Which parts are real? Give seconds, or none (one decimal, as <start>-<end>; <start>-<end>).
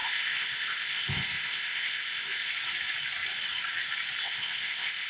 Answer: 2.5-4.2